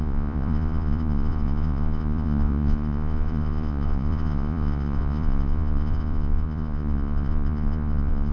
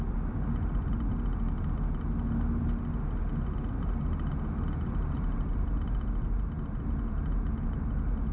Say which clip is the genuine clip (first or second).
second